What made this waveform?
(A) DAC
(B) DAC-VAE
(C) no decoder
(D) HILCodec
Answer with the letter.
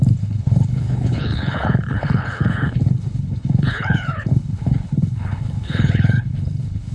D